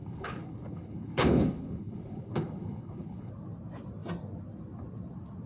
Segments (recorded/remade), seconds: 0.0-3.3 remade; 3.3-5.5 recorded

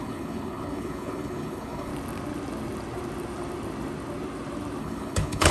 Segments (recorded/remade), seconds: 0.0-1.9 remade; 1.9-4.8 recorded; 4.8-5.5 remade

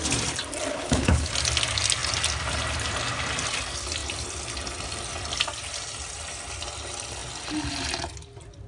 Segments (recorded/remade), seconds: 0.0-0.7 recorded; 0.7-1.3 remade; 1.3-8.7 recorded